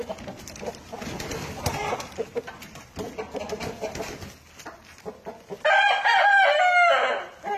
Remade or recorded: recorded